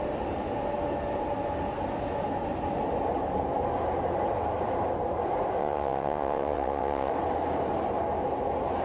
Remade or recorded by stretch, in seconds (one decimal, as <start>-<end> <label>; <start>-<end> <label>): 0.0-5.6 recorded; 5.6-7.1 remade; 7.1-8.8 recorded